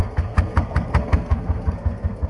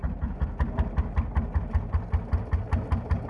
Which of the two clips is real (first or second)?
second